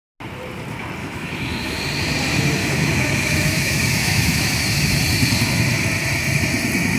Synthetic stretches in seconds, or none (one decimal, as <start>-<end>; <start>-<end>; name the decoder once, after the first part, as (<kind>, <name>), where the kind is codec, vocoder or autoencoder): 1.0-1.8 (autoencoder, DAC-VAE); 2.6-5.0